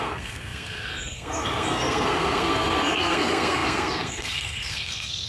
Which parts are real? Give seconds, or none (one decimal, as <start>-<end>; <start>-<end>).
none